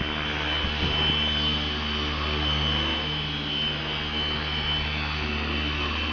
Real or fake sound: real